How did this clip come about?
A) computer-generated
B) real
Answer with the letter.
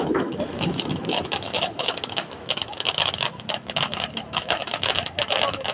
A